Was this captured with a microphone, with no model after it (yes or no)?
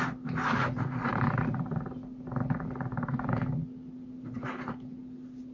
yes